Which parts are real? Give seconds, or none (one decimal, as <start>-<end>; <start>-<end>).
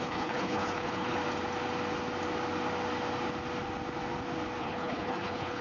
1.2-4.6